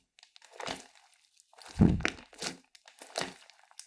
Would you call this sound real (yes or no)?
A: yes